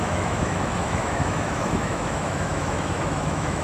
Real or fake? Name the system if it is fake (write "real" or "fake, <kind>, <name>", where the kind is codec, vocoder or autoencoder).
fake, autoencoder, DAC-VAE